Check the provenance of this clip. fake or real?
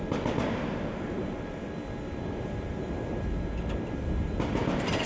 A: real